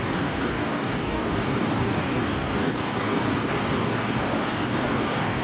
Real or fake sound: fake